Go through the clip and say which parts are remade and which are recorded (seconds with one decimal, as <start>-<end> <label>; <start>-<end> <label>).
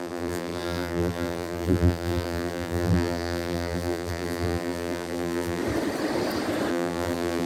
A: 0.0-5.6 remade; 5.6-6.7 recorded; 6.7-7.5 remade